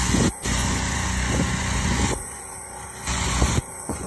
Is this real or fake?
fake